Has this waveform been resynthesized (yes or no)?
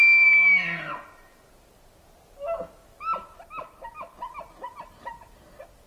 no